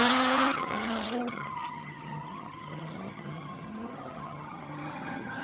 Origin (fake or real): fake